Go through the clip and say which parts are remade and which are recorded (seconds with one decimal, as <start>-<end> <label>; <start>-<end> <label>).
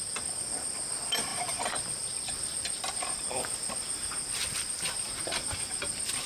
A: 0.0-6.3 recorded